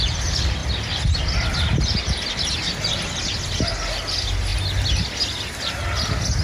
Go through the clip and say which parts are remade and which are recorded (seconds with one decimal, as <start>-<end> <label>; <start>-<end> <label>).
0.0-6.4 recorded